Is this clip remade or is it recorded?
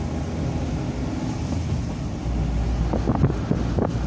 recorded